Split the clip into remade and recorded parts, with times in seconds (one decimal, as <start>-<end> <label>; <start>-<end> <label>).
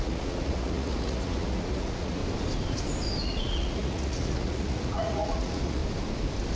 0.0-2.2 remade; 2.2-3.2 recorded; 3.2-5.8 remade; 5.8-6.5 recorded